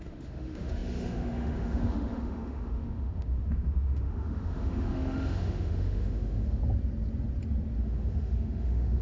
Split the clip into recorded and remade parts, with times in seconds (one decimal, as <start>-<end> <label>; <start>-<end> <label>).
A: 0.0-6.6 remade; 6.6-7.8 recorded; 7.8-9.0 remade

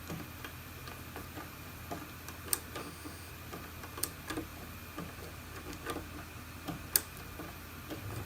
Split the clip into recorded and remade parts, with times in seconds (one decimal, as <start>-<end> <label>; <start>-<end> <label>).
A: 0.0-2.8 recorded; 2.8-3.3 remade; 3.3-8.2 recorded

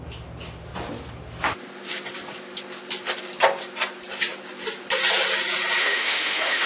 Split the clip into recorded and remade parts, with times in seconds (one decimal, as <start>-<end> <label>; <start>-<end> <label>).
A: 0.0-5.8 recorded; 5.8-6.7 remade

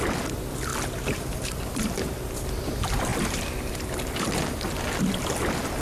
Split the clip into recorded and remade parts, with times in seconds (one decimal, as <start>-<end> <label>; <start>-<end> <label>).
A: 0.0-5.8 recorded

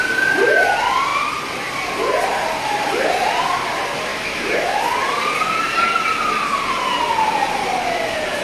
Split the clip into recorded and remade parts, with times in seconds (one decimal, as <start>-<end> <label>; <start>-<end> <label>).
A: 0.0-4.1 recorded; 4.1-4.8 remade; 4.8-8.4 recorded